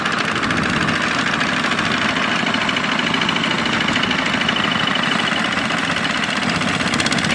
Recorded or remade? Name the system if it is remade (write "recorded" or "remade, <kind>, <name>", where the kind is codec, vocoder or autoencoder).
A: recorded